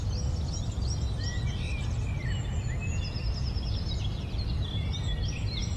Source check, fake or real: real